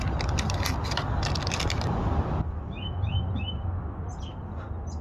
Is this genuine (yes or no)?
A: yes